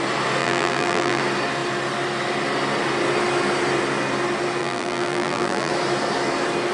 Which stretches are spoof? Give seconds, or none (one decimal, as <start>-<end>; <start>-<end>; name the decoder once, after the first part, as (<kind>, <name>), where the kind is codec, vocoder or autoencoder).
0.4-1.2 (vocoder, BigVGAN v2); 4.6-5.7